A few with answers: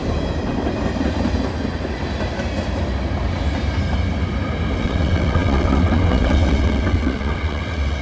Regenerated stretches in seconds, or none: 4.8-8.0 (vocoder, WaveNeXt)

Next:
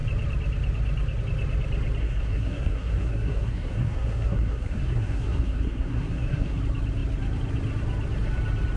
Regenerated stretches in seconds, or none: 2.0-6.6 (codec, SNAC)

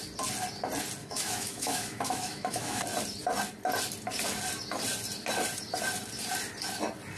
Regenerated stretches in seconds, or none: 1.0-2.8 (autoencoder, DAC-VAE)

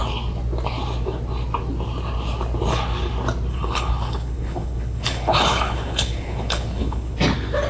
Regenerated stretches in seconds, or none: 3.5-7.2 (codec, HILCodec)

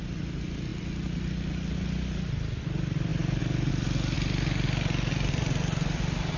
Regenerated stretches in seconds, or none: none

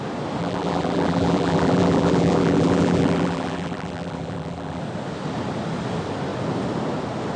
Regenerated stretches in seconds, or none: 0.4-4.8 (vocoder, BigVGAN v2)

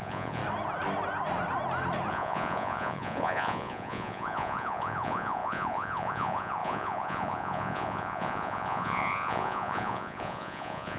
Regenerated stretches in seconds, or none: 0.0-0.4 (vocoder, Vocos); 2.1-11.0